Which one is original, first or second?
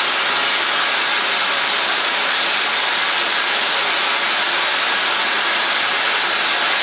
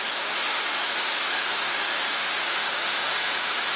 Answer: first